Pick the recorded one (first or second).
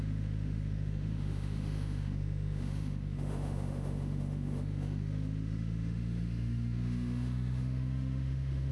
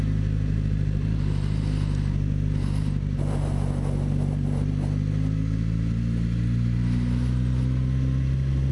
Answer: second